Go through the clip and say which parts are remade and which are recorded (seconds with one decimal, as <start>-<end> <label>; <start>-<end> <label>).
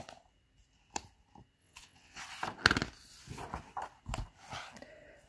0.0-1.6 recorded; 1.6-2.2 remade; 2.2-5.3 recorded